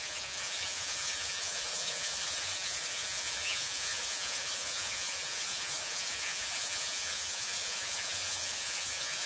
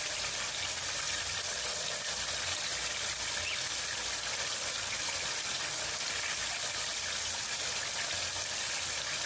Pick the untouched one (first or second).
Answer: second